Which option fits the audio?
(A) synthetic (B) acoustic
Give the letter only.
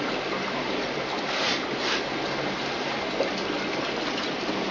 A